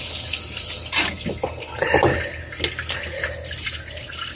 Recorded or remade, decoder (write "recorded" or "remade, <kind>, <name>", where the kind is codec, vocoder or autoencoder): recorded